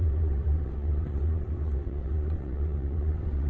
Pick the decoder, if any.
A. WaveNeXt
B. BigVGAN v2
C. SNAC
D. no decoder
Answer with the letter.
A